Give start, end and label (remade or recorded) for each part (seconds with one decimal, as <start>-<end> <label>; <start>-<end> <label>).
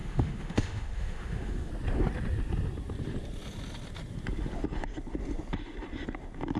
0.0-1.7 remade; 1.7-6.6 recorded